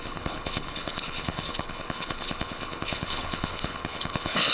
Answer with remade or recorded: remade